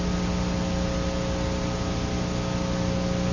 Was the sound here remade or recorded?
recorded